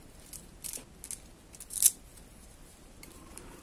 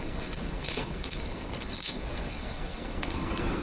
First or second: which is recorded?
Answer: first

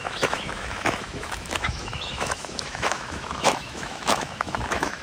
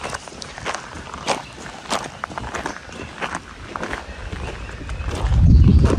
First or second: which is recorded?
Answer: second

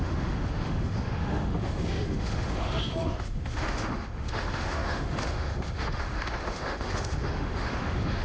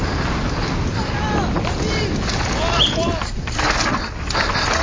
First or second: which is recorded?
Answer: second